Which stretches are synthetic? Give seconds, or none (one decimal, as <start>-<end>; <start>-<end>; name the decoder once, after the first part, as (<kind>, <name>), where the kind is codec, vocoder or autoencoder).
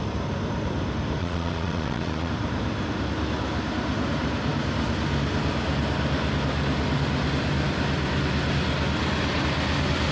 1.2-2.3 (vocoder, Vocos)